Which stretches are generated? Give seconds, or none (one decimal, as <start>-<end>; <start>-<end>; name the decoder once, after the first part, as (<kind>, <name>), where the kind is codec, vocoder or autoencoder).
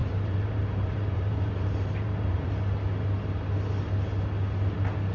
0.0-2.5 (vocoder, BigVGAN v2)